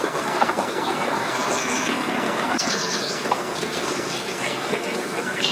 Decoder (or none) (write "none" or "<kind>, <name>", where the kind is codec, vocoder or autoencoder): codec, SNAC